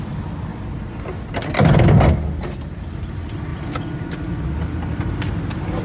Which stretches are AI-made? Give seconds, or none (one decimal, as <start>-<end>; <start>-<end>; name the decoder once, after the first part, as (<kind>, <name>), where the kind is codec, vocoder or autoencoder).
none